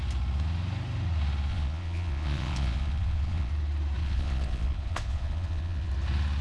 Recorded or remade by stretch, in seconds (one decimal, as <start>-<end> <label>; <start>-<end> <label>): 0.0-1.5 recorded; 1.5-3.5 remade; 3.5-4.0 recorded; 4.0-5.9 remade; 5.9-6.4 recorded